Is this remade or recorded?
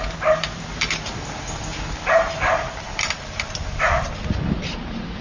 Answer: remade